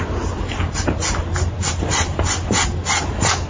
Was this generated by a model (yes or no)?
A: no